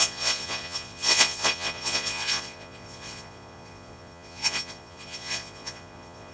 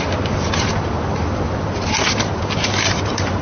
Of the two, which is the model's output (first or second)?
first